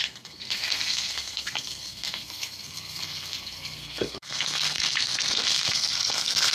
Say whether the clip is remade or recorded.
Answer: remade